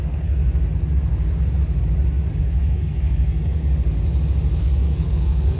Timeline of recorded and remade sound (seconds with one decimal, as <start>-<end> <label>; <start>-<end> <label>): 0.0-0.4 remade; 0.4-2.4 recorded; 2.4-3.6 remade; 3.6-4.6 recorded; 4.6-5.6 remade